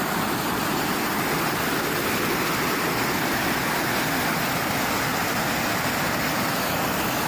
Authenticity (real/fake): real